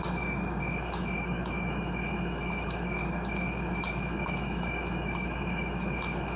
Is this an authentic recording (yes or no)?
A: no